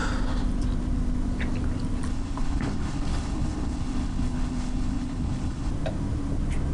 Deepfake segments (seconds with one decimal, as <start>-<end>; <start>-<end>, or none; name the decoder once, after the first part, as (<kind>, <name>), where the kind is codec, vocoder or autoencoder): 2.1-5.7 (codec, HILCodec)